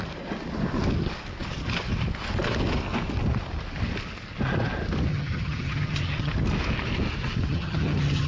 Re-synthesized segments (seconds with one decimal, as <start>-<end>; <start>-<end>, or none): 5.1-6.3; 7.5-8.3